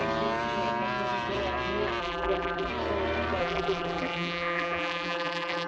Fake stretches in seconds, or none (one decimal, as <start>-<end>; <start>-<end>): 2.0-2.7; 3.4-5.7

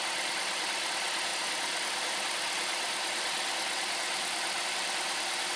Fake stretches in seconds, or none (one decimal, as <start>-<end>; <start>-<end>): 0.0-1.3; 4.7-5.6

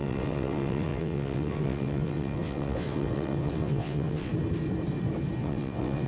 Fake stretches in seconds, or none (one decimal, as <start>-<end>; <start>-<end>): 0.0-4.3; 5.4-6.1

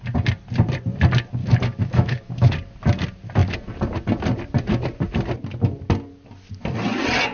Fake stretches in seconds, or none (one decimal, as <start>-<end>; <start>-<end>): 1.4-2.5

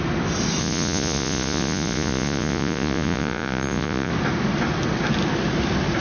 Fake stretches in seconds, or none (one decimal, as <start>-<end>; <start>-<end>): 0.6-4.1

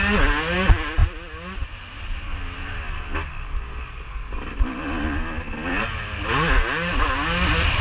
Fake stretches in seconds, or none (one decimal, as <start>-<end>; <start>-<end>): none

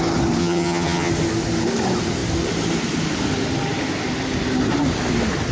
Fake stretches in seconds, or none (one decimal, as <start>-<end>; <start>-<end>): 0.4-1.1